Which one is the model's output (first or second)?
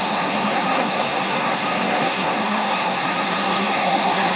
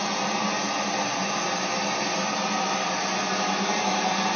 first